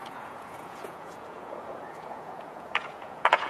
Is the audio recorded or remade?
remade